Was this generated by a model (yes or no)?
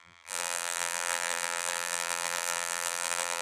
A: yes